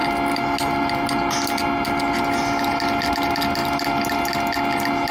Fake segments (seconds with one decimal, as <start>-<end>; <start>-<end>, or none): none